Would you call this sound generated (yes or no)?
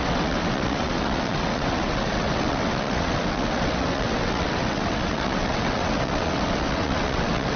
yes